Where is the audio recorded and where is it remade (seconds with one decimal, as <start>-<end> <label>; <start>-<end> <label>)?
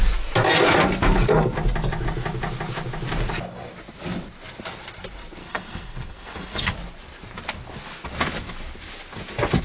0.0-5.4 recorded; 5.4-6.7 remade; 6.7-9.6 recorded